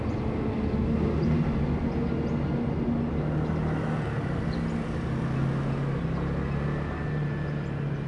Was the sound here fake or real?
real